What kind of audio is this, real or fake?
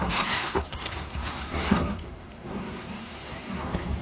fake